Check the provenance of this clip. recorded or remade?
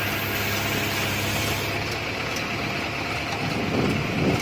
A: recorded